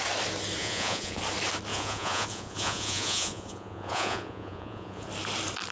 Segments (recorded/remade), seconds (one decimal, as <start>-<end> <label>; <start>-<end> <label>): 0.0-0.6 recorded; 0.6-1.2 remade; 1.2-1.7 recorded; 1.7-5.1 remade; 5.1-5.7 recorded